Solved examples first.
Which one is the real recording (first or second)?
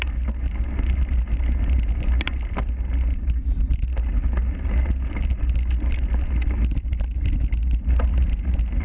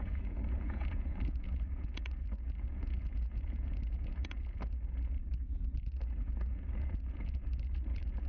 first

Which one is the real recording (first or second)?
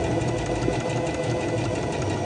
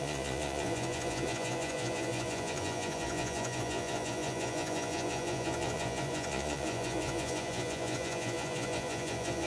first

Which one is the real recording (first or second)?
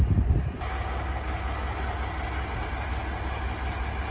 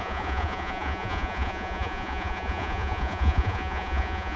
first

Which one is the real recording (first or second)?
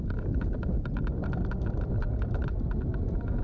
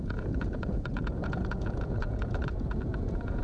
first